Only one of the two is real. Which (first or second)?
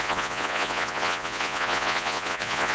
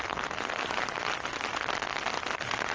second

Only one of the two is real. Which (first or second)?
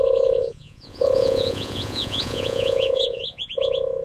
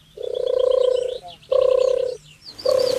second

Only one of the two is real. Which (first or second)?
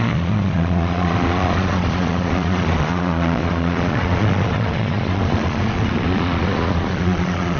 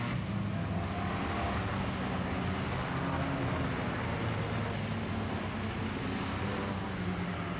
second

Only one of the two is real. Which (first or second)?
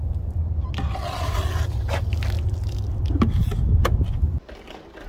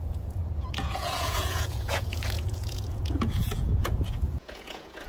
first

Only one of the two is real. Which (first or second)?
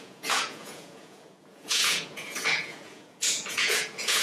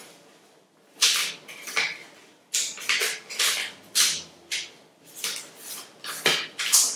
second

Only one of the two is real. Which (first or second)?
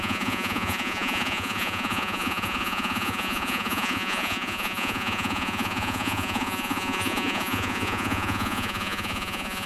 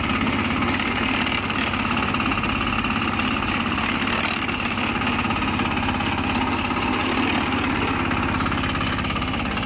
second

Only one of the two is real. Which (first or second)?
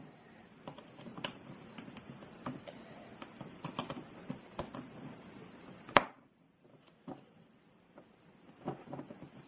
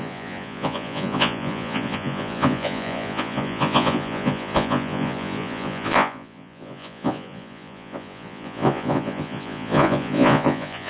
first